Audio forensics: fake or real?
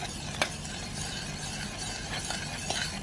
real